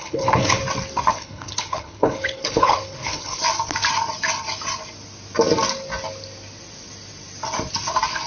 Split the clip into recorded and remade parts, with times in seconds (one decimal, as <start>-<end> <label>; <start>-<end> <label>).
0.0-0.6 remade; 0.6-1.1 recorded; 1.1-3.4 remade; 3.4-8.3 recorded